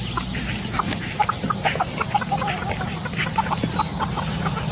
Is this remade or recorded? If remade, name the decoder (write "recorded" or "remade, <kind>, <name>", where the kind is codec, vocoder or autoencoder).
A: recorded